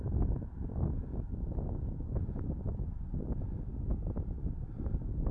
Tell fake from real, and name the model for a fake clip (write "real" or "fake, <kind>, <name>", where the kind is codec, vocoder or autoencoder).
real